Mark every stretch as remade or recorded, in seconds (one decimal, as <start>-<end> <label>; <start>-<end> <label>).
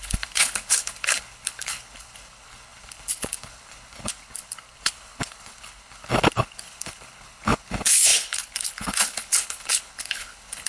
0.0-10.7 remade